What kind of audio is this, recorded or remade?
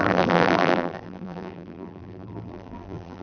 remade